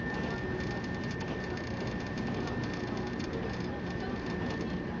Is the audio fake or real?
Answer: real